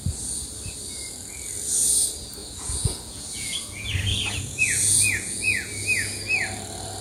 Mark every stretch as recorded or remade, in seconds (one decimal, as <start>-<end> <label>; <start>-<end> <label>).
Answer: 0.0-2.4 recorded; 2.4-5.7 remade; 5.7-7.0 recorded